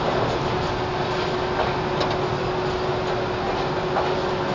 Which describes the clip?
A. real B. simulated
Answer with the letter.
A